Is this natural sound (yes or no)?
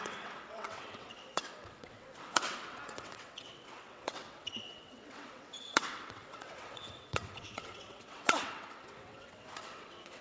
no